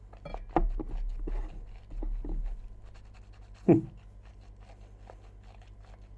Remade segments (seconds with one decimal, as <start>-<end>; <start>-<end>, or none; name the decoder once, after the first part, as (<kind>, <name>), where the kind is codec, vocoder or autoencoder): none